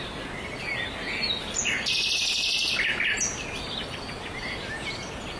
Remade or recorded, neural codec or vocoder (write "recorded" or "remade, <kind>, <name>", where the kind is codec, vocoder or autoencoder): recorded